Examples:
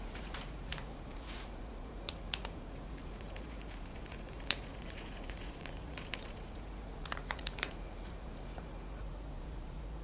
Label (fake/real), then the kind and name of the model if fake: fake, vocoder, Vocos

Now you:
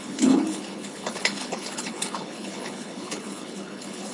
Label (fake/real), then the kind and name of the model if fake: fake, codec, HILCodec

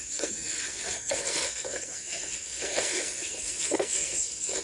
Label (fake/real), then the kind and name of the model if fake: fake, codec, SNAC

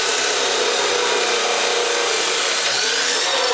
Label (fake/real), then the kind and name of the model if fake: real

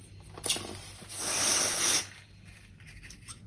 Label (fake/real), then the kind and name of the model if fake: real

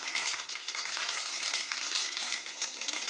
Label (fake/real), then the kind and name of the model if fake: fake, codec, SNAC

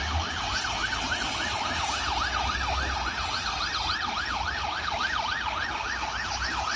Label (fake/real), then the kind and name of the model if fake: real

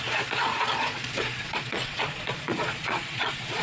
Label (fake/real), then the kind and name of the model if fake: fake, vocoder, Vocos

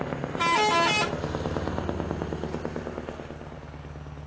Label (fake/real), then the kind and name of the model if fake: real